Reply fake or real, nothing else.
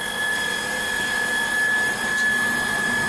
real